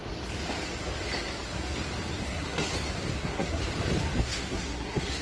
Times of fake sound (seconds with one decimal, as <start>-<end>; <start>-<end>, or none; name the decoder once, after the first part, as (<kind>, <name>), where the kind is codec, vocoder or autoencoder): 2.3-2.7 (codec, SNAC); 3.2-3.6; 4.2-5.2